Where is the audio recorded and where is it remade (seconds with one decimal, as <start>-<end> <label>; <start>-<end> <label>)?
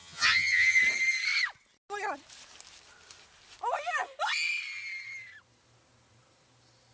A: 0.0-0.8 remade; 0.8-6.9 recorded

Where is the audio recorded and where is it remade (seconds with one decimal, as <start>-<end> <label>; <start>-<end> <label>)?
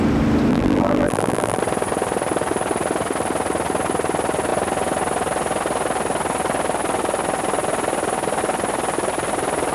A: 0.0-0.5 recorded; 0.5-1.6 remade; 1.6-9.7 recorded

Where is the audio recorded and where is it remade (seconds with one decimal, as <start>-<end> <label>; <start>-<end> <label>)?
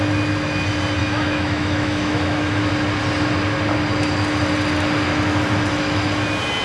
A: 0.0-1.0 recorded; 1.0-2.7 remade; 2.7-6.6 recorded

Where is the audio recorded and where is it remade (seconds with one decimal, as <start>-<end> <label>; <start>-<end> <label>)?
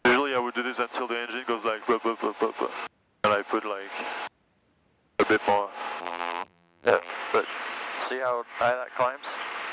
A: 0.0-6.0 recorded; 6.0-7.1 remade; 7.1-9.7 recorded